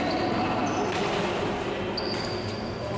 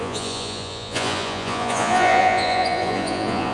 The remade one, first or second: second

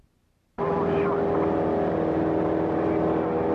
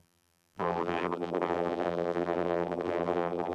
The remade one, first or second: second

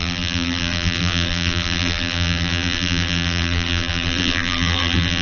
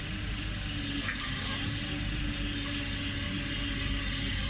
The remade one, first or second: first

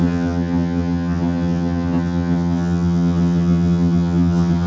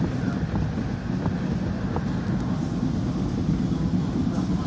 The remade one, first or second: first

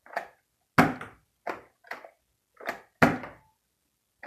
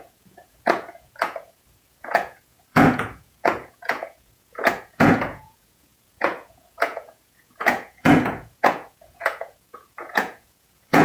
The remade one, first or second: second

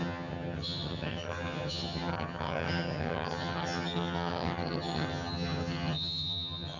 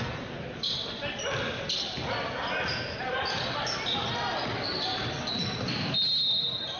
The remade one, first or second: first